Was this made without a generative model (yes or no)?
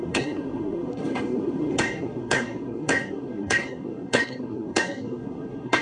no